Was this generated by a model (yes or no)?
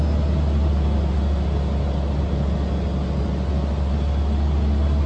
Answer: no